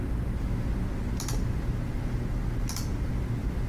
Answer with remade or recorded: recorded